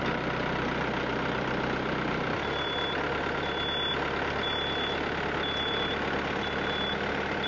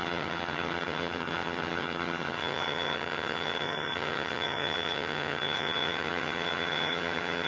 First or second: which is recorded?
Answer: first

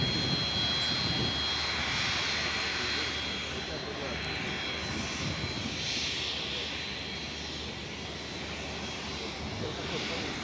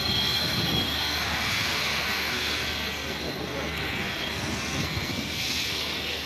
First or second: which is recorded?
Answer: first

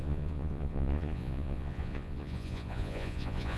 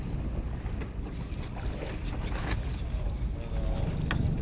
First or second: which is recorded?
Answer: second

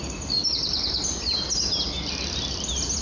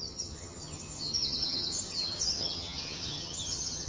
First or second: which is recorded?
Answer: first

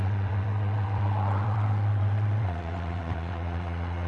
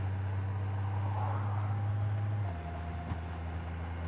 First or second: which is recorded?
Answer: second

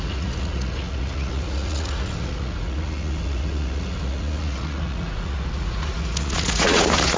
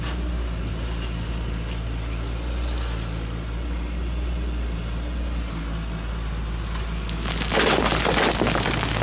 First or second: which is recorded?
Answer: second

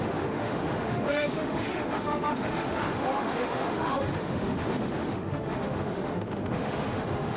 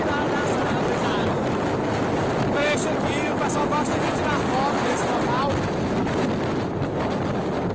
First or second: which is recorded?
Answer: second